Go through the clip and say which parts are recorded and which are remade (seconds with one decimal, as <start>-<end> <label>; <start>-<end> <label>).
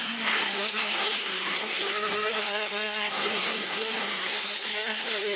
0.0-5.4 remade